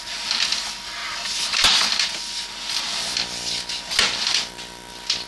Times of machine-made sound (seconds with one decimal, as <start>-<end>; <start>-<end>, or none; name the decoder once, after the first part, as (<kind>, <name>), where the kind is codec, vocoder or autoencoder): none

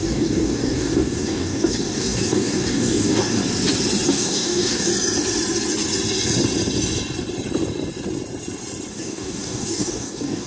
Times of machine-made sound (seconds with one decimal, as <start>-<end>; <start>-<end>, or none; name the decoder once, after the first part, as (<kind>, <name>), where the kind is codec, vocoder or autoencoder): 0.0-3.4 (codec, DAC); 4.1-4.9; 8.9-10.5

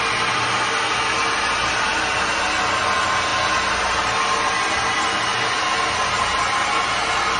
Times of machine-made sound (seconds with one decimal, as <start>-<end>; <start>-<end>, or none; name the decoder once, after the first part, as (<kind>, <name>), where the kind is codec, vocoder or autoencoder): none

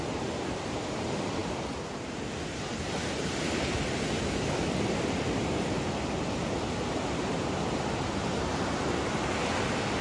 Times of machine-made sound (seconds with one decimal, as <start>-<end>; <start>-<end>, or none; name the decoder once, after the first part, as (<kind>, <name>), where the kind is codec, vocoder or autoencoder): none

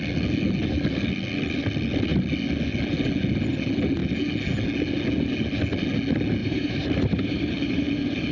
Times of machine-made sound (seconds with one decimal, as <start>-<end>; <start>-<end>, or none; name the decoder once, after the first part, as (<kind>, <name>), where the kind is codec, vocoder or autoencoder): 6.4-8.3 (vocoder, BigVGAN v2)

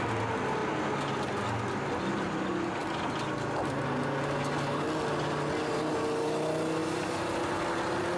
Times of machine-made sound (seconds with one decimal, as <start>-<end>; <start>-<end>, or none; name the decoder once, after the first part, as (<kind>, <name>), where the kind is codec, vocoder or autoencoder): none